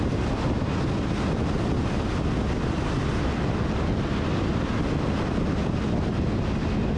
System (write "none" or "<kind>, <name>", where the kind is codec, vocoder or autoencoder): none